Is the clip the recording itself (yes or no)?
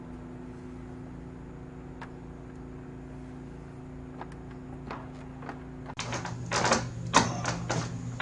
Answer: yes